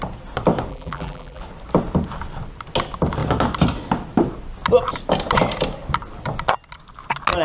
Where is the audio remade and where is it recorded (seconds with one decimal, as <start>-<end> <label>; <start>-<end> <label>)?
0.0-0.7 recorded; 0.7-1.4 remade; 1.4-7.4 recorded